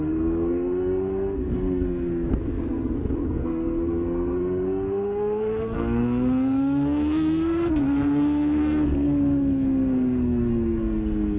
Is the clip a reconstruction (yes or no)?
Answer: yes